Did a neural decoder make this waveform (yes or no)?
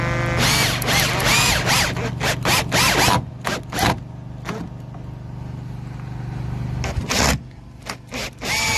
no